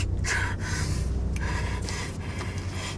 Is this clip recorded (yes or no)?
yes